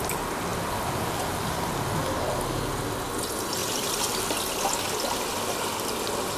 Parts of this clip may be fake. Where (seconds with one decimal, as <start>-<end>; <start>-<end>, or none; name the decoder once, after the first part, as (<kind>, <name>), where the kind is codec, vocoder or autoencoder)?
0.5-1.7 (vocoder, BigVGAN v2); 3.6-4.5